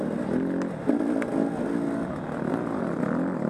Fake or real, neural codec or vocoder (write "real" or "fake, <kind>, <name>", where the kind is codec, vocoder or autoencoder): real